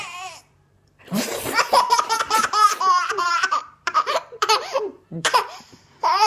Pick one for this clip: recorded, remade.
remade